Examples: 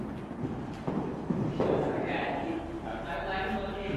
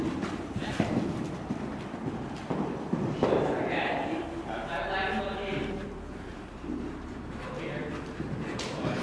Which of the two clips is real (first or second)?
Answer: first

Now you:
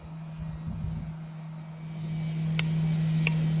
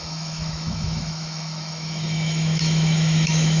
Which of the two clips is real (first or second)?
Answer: first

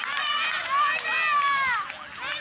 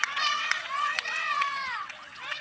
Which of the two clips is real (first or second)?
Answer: first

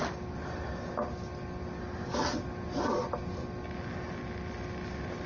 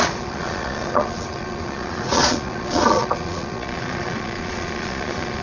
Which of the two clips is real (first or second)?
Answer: first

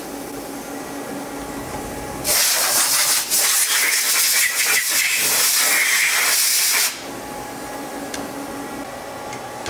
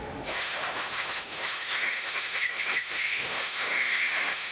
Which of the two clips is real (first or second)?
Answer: first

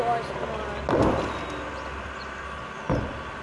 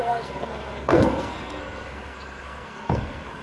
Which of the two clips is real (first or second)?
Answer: first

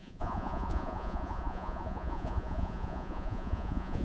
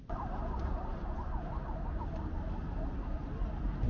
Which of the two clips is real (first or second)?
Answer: second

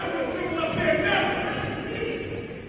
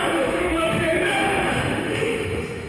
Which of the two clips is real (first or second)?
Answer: first